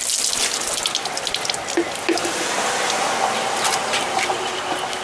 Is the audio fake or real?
real